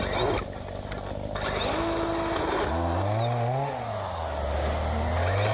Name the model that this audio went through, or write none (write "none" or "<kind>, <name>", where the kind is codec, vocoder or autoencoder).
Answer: none